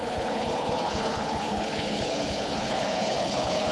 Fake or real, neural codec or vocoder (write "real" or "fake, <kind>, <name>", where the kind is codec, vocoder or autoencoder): fake, codec, HILCodec